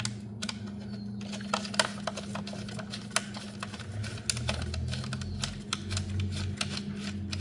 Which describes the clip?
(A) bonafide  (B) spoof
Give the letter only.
A